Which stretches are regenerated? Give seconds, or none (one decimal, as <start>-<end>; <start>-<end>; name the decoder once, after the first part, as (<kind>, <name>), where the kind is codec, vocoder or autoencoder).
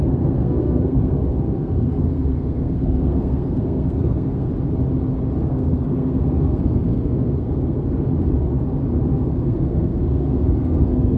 0.0-4.5 (codec, SNAC); 5.4-8.1; 9.1-11.2